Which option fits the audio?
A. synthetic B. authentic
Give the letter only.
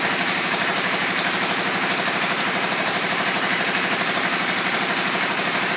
A